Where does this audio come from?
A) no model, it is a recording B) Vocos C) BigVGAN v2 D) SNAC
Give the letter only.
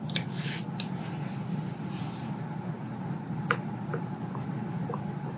A